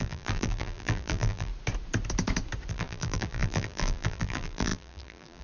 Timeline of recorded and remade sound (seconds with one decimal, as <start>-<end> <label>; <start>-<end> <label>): 0.0-1.5 remade; 1.5-2.7 recorded; 2.7-5.4 remade

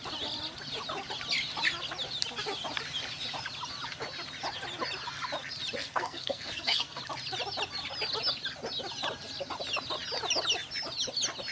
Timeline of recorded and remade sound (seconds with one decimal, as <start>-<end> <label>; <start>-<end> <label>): 0.0-5.8 recorded; 5.8-7.0 remade; 7.0-11.5 recorded

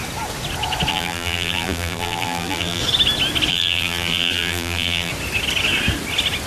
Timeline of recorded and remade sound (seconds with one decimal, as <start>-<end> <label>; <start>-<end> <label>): 0.0-0.9 recorded; 0.9-2.8 remade; 2.8-3.5 recorded; 3.5-5.1 remade; 5.1-6.5 recorded

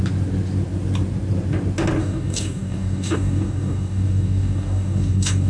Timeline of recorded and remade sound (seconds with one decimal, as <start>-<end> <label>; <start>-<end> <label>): 0.0-2.0 recorded; 2.0-5.5 remade

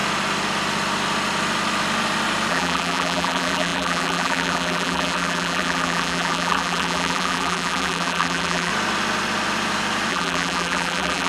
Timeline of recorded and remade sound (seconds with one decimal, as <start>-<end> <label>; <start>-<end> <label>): 0.0-2.5 recorded; 2.5-8.7 remade; 8.7-10.1 recorded; 10.1-11.3 remade

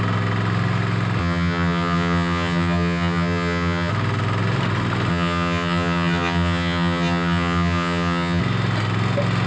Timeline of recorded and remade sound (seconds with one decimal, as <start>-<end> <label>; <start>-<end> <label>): 0.0-1.2 recorded; 1.2-3.9 remade; 3.9-5.1 recorded; 5.1-8.4 remade; 8.4-9.5 recorded

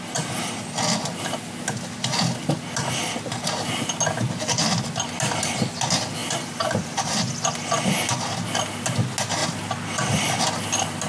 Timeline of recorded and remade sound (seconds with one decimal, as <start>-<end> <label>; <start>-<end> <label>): 0.0-6.2 recorded; 6.2-7.1 remade; 7.1-9.4 recorded; 9.4-10.3 remade; 10.3-11.1 recorded

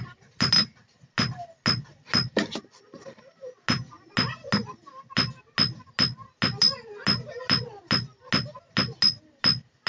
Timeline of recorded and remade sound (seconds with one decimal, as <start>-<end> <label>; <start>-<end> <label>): 0.0-9.9 recorded